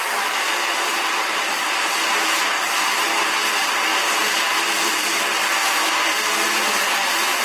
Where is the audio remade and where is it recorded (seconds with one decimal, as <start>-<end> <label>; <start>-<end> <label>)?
0.0-7.4 recorded